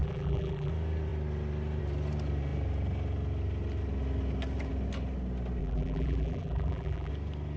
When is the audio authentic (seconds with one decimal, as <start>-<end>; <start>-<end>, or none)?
0.7-5.6; 7.1-7.6